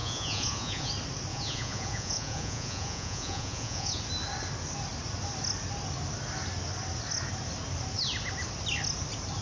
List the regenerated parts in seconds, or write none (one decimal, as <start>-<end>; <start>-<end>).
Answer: 0.0-0.9; 1.3-4.0